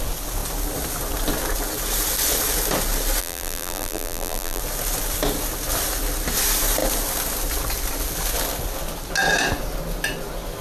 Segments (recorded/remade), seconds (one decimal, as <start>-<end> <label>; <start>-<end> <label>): 0.0-3.2 recorded; 3.2-4.6 remade; 4.6-10.6 recorded